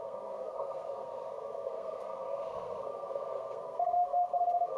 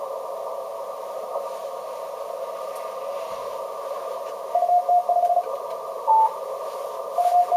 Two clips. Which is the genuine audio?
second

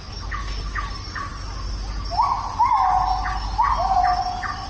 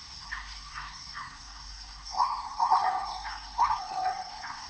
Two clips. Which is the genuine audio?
first